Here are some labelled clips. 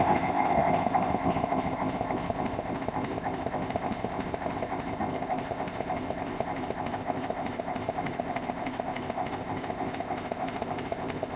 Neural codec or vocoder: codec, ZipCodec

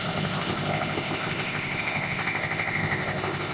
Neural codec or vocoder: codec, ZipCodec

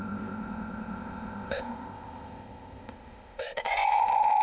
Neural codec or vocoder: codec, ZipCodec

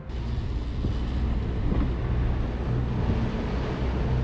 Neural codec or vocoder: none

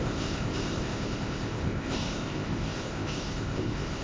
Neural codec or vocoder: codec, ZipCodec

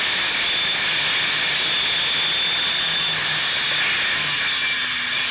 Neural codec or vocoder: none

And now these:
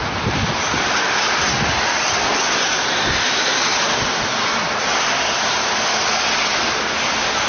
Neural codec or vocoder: none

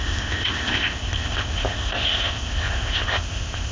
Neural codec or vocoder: codec, ZipCodec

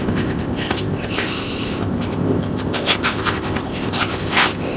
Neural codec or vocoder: codec, ZipCodec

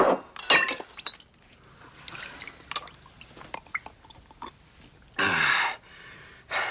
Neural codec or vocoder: none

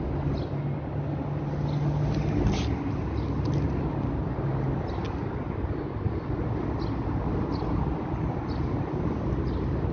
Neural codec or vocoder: none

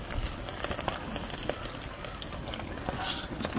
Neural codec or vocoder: none